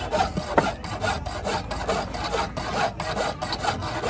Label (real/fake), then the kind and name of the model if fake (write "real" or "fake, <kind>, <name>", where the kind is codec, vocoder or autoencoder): real